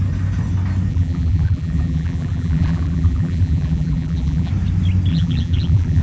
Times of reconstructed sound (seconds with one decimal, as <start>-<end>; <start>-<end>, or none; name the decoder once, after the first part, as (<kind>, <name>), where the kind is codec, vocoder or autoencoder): 0.9-4.5 (vocoder, BigVGAN v2); 5.1-6.0